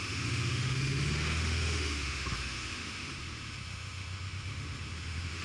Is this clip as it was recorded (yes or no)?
no